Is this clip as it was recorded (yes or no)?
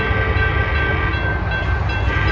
yes